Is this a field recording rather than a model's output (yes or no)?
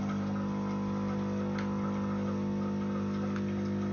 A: yes